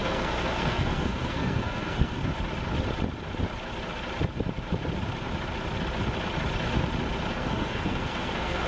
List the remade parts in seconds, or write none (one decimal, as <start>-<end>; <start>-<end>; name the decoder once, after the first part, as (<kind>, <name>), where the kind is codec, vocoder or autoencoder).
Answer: 0.0-2.2 (codec, SNAC); 7.3-8.7